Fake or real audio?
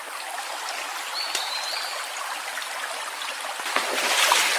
real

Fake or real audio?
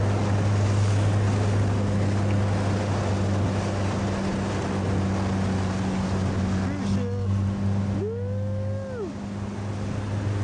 real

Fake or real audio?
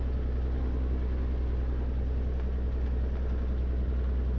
real